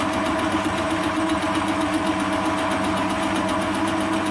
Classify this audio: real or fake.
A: real